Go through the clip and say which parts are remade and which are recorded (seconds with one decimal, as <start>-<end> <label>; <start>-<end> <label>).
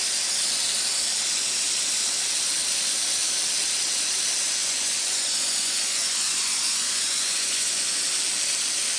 0.0-4.6 recorded; 4.6-8.0 remade; 8.0-9.0 recorded